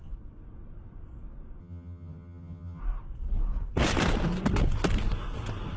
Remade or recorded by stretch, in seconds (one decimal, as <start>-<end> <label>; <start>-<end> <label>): 0.0-1.6 recorded; 1.6-2.8 remade; 2.8-5.8 recorded